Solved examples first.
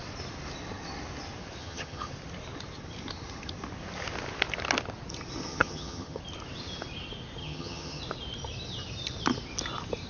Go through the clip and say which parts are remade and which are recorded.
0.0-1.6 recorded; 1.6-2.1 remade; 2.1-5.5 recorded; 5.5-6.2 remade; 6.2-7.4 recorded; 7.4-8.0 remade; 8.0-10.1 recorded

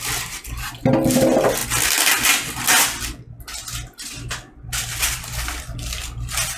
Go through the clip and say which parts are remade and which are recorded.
0.0-6.6 recorded

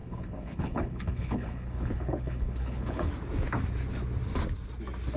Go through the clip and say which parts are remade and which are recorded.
0.0-3.1 remade; 3.1-5.2 recorded

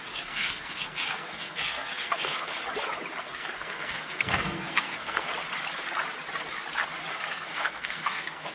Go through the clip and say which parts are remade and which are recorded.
0.0-2.5 remade; 2.5-3.2 recorded; 3.2-5.3 remade; 5.3-7.1 recorded; 7.1-8.5 remade

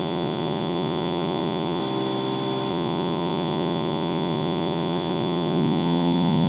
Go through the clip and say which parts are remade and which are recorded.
0.0-1.8 remade; 1.8-2.7 recorded; 2.7-6.5 remade